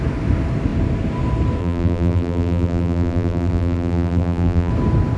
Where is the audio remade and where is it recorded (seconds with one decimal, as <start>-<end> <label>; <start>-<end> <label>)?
0.0-1.6 recorded; 1.6-4.7 remade; 4.7-5.2 recorded